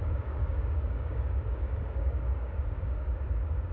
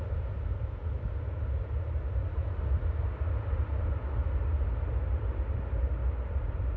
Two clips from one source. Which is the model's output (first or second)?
first